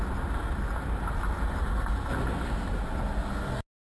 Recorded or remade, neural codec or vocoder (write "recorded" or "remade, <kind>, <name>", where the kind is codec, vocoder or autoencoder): recorded